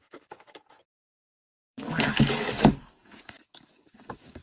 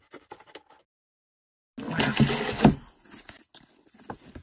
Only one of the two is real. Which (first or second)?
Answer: second